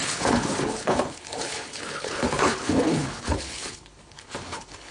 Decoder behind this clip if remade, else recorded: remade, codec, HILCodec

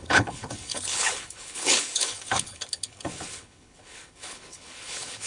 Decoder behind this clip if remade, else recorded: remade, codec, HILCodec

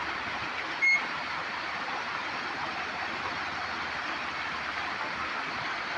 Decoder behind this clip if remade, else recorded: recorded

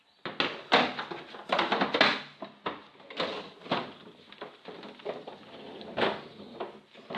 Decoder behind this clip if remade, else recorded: recorded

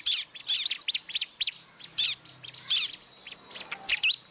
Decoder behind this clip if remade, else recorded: recorded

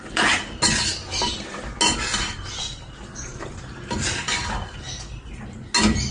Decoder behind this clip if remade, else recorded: recorded